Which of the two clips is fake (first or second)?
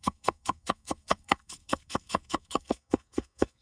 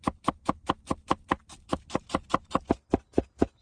first